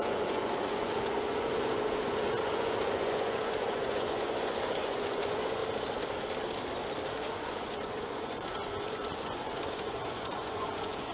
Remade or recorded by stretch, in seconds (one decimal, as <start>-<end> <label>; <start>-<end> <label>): 0.0-5.6 remade; 5.6-7.1 recorded; 7.1-11.1 remade